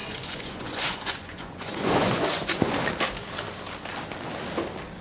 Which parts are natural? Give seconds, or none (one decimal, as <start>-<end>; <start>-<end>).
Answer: 2.8-5.0